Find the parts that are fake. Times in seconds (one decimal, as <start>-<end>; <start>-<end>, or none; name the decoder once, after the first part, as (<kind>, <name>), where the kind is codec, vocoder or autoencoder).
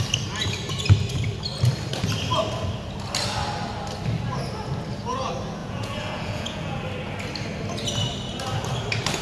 5.6-6.8 (vocoder, Vocos)